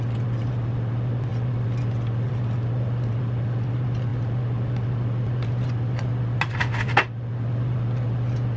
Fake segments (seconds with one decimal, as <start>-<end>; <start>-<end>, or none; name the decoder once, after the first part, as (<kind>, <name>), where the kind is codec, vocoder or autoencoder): none